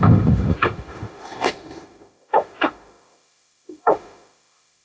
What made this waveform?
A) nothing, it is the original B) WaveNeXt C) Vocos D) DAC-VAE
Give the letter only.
D